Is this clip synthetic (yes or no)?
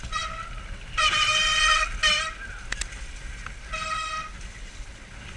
no